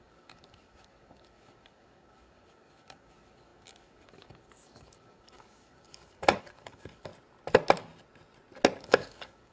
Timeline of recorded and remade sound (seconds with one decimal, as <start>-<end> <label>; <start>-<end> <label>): 0.0-7.1 remade; 7.1-8.8 recorded; 8.8-9.5 remade